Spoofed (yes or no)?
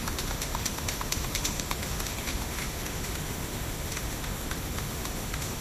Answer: yes